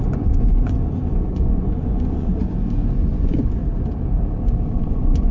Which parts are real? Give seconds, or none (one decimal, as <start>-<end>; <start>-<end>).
2.3-3.1; 3.6-4.8

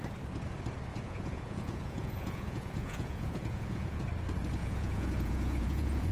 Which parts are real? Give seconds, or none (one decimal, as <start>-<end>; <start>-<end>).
0.0-0.9; 4.0-4.6

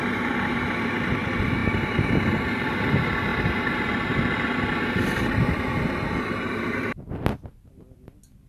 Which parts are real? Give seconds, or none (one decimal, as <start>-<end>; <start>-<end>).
0.0-8.5

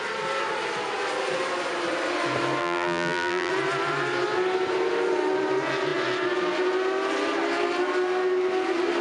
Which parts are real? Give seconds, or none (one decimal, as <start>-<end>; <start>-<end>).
0.0-2.6; 3.5-9.0

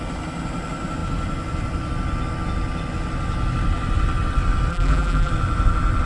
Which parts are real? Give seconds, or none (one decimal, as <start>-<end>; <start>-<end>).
0.0-4.7; 5.3-6.0